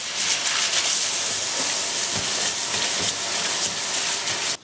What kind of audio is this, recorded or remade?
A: recorded